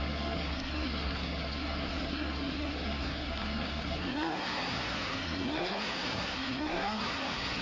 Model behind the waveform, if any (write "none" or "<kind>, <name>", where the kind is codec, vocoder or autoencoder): codec, SNAC